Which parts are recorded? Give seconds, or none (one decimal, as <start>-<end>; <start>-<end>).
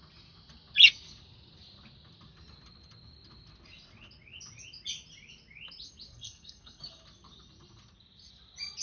0.0-6.1; 6.8-8.8